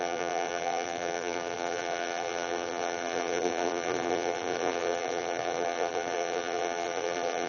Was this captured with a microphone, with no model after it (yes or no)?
no